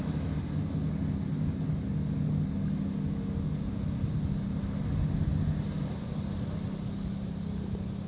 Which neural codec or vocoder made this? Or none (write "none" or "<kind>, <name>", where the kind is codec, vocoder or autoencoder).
none